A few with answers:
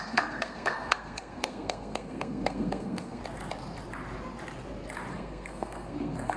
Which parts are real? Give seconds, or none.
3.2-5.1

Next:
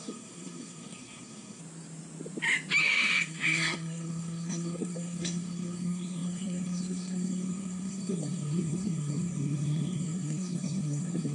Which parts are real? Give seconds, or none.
1.6-2.8

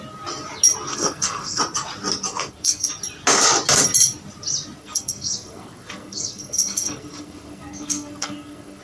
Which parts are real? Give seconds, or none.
0.0-0.9; 1.6-2.3; 2.9-4.8

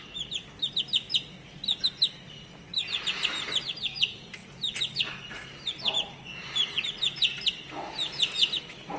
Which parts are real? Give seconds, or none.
0.0-9.0